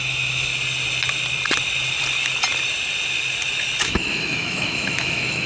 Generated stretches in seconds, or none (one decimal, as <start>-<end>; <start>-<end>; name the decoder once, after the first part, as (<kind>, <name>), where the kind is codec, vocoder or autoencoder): 0.0-0.5 (autoencoder, DAC-VAE); 3.8-5.5